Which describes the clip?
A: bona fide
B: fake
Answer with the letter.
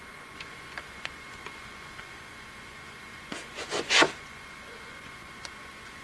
B